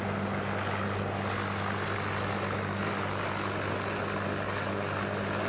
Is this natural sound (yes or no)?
yes